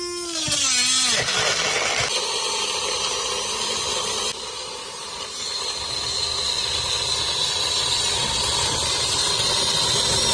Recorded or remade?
recorded